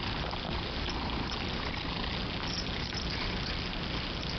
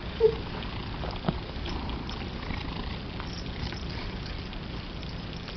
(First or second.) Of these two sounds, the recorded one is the first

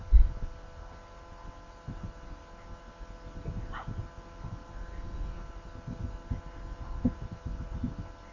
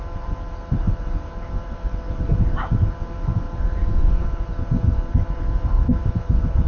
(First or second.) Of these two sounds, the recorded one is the first